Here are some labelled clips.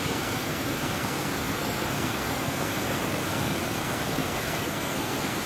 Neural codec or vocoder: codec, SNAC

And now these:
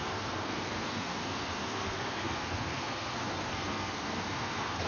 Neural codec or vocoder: codec, SNAC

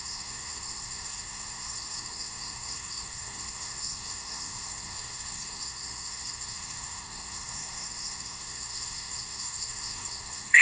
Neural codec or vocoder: codec, SNAC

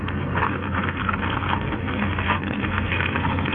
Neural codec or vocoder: codec, SNAC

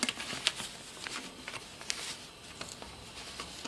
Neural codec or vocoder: none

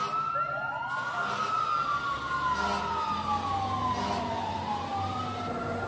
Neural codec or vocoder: none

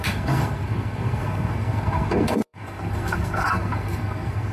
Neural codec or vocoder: codec, SNAC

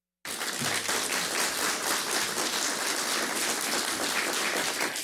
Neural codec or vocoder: none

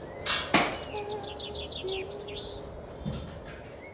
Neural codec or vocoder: none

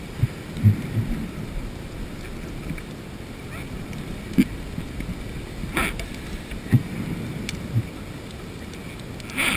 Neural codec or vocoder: none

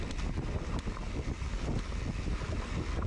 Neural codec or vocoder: none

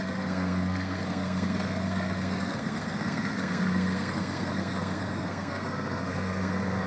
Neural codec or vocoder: codec, SNAC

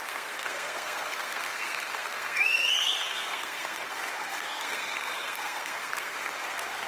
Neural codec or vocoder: codec, SNAC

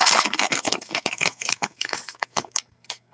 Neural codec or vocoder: codec, SNAC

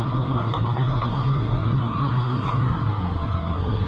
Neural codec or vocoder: codec, SNAC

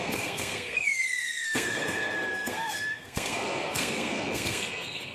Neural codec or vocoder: codec, SNAC